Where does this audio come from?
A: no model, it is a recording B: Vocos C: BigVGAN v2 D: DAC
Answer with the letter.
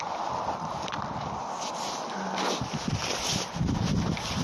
A